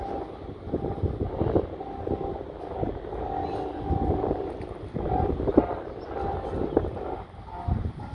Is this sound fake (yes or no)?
no